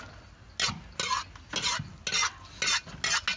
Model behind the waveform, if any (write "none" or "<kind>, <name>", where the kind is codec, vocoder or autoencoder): none